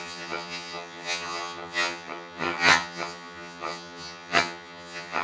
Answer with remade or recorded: remade